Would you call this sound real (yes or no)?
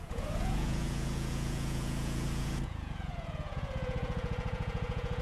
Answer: no